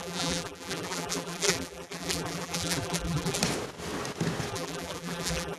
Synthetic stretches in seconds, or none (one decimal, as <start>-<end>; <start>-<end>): 0.0-3.4; 4.5-5.6